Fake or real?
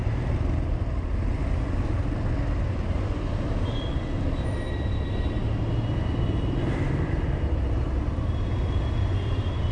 real